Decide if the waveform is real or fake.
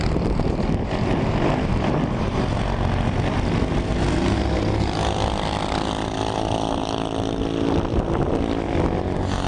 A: real